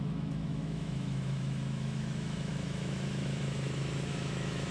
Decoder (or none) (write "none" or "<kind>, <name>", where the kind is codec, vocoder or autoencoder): autoencoder, DAC-VAE